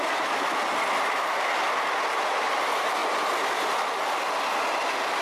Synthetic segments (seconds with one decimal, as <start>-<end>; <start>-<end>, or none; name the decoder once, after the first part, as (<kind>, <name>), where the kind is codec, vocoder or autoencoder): none